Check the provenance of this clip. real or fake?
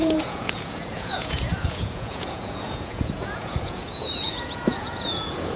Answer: fake